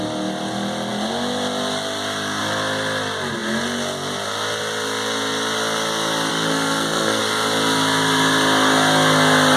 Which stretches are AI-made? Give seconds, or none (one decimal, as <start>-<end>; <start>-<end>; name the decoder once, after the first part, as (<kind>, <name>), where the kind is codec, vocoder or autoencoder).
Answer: 6.3-7.2 (codec, SNAC)